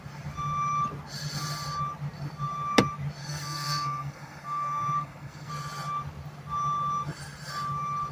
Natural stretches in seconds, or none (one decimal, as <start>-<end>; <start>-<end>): 0.0-3.2; 5.5-8.1